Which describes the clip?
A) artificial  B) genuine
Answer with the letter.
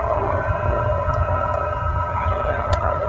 A